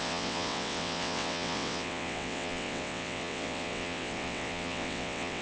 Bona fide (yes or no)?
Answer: no